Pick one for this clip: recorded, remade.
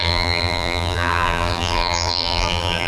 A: remade